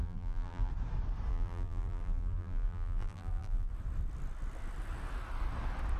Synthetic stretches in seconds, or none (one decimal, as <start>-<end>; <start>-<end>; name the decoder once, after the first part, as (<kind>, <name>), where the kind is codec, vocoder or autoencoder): 0.0-0.7 (vocoder, BigVGAN v2); 1.3-3.7